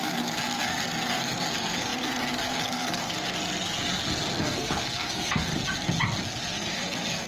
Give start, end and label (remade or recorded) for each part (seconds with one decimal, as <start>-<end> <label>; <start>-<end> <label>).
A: 0.0-3.4 remade; 3.4-4.4 recorded; 4.4-5.5 remade; 5.5-6.7 recorded; 6.7-7.3 remade